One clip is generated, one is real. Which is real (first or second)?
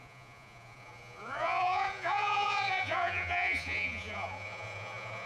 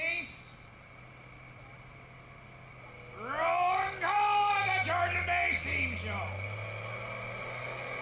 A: second